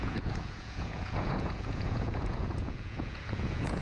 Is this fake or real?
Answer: fake